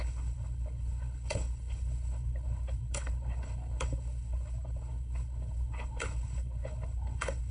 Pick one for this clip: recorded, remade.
remade